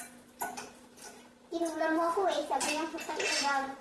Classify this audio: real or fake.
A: real